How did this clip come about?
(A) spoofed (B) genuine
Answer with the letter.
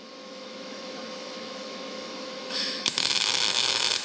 A